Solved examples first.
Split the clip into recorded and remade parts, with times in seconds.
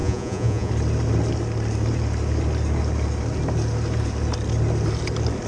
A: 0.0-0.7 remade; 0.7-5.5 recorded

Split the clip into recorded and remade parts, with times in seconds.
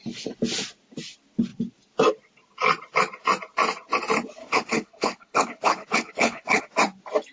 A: 0.0-4.4 recorded; 4.4-6.6 remade; 6.6-7.3 recorded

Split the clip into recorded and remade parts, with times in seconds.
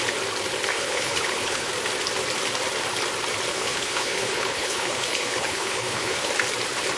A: 0.0-0.7 recorded; 0.7-1.7 remade; 1.7-3.5 recorded; 3.5-6.3 remade; 6.3-7.0 recorded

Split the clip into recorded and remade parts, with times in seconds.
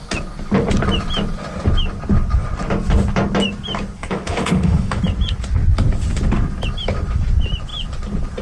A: 0.0-4.0 recorded; 4.0-5.0 remade; 5.0-8.4 recorded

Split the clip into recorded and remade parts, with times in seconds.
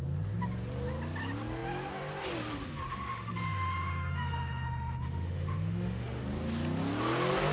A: 0.0-2.9 recorded; 2.9-6.2 remade; 6.2-7.5 recorded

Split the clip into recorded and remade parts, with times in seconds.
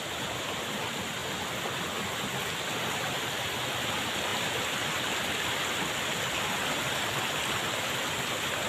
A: 0.0-1.2 remade; 1.2-3.8 recorded; 3.8-8.7 remade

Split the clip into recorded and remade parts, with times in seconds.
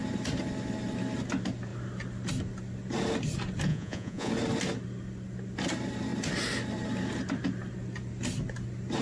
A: 0.0-3.7 recorded; 3.7-4.3 remade; 4.3-9.0 recorded